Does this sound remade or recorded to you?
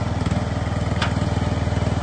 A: recorded